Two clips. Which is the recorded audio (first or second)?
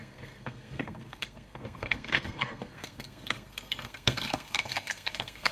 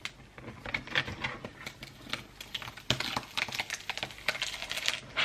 second